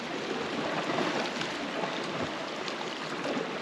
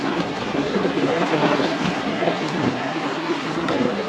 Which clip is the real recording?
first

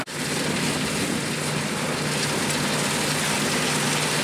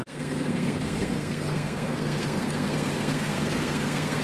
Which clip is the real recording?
first